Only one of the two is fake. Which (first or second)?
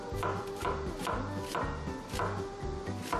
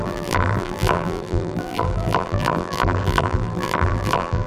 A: second